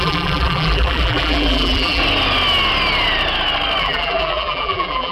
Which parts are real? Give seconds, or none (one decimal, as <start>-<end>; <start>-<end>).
2.0-3.8